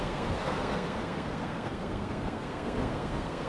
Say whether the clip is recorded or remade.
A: remade